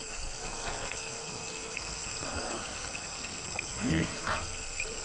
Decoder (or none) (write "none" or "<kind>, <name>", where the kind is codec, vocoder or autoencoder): codec, SNAC